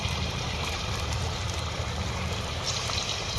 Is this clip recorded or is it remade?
remade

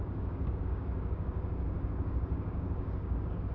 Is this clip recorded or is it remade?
remade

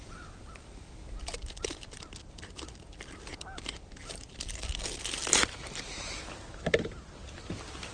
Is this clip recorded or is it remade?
recorded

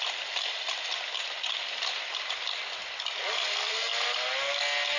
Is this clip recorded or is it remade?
recorded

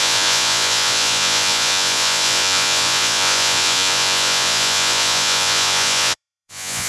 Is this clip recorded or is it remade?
remade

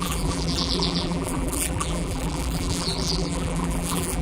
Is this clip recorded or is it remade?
remade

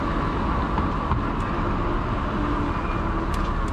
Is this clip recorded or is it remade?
recorded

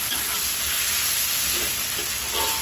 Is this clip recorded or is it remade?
recorded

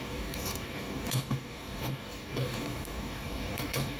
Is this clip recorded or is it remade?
remade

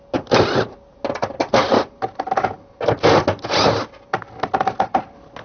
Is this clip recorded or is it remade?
recorded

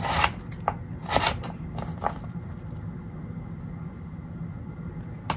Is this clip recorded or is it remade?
recorded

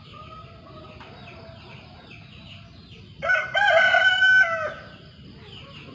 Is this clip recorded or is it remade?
recorded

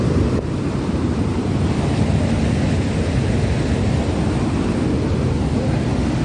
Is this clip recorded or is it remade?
recorded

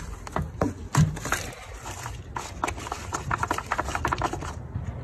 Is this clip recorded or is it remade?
recorded